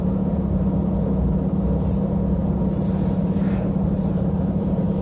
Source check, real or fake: fake